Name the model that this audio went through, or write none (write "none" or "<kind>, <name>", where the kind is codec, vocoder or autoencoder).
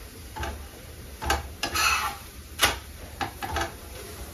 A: vocoder, BigVGAN v2